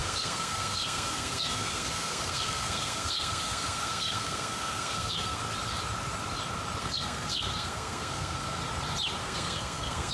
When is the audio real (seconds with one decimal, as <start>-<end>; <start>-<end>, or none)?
5.4-6.8; 8.6-9.2